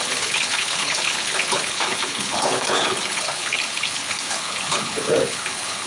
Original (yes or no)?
no